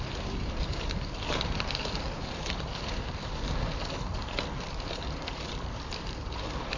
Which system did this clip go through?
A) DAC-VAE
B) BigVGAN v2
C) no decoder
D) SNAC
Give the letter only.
B